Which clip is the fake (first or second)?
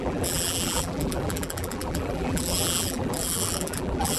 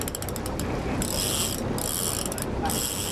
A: first